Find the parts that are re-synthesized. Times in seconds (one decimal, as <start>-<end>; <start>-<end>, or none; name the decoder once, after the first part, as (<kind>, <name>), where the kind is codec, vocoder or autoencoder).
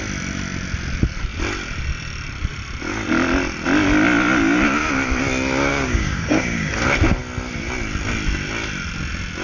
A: 5.7-6.7 (codec, DAC)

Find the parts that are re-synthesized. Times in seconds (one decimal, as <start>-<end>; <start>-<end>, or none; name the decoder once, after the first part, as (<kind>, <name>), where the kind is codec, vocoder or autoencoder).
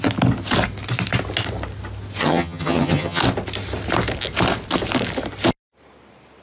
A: 2.2-3.2 (vocoder, HiFi-GAN)